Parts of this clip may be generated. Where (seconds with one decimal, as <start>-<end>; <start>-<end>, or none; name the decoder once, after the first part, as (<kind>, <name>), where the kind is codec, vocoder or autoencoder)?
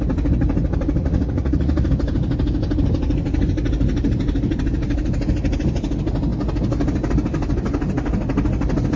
1.0-1.9 (vocoder, Vocos)